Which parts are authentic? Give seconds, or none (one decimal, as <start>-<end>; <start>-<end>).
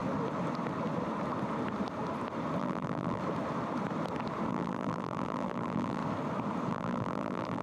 0.0-2.6; 3.2-4.5; 6.0-6.7